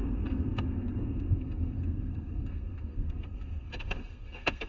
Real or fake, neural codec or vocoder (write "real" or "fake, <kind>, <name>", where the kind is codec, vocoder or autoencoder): fake, codec, SNAC